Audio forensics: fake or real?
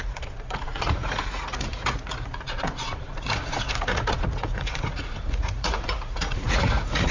fake